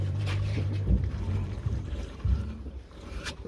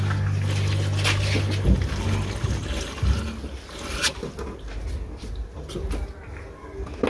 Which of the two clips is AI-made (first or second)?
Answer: first